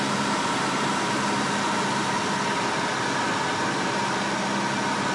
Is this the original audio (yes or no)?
yes